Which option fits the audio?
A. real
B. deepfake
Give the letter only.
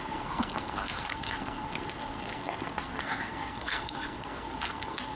B